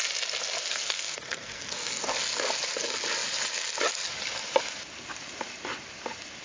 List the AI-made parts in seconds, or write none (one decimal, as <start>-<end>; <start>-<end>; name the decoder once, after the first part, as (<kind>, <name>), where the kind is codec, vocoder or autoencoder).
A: 0.6-2.1 (codec, SNAC)